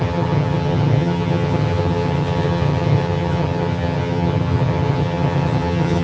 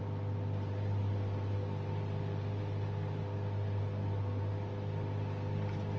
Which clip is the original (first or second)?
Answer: second